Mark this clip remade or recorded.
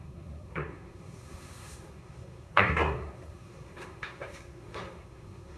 remade